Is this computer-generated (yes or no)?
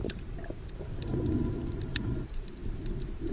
no